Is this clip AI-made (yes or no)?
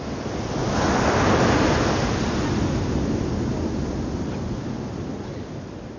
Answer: no